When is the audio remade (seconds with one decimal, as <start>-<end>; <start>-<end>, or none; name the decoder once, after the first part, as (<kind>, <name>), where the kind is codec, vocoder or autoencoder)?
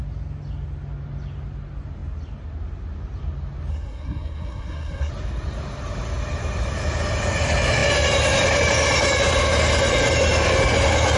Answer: 3.7-5.1 (codec, SNAC)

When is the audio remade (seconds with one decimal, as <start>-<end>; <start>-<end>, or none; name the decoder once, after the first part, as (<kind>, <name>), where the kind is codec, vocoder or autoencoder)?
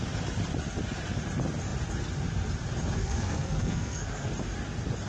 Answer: 3.0-4.3 (codec, SNAC)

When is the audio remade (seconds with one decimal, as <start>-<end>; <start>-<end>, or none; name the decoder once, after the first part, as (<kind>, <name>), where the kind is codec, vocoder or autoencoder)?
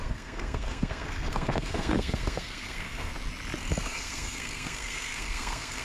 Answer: 0.0-3.1 (codec, SNAC); 3.8-5.8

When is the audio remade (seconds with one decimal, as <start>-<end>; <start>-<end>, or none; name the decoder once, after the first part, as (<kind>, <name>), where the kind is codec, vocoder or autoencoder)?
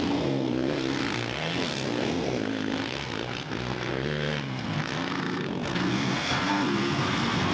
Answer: 0.0-7.5 (codec, SNAC)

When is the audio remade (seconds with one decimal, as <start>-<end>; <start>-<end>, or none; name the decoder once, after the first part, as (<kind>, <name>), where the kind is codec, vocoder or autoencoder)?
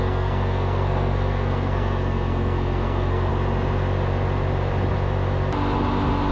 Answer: 0.0-3.3 (codec, SNAC)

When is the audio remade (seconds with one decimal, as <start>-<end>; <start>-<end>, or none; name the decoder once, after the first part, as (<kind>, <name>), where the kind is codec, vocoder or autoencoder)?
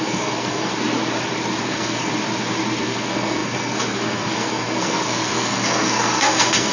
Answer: 0.0-0.7 (codec, SNAC); 1.6-2.1; 2.8-6.7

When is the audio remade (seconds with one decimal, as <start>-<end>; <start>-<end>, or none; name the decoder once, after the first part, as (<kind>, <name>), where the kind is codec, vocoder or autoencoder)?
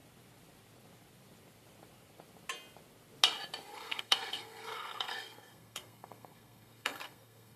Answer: 3.7-7.6 (codec, SNAC)